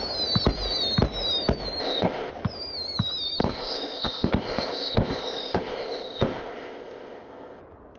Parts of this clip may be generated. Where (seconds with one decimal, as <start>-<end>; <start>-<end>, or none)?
1.8-2.3; 3.4-7.6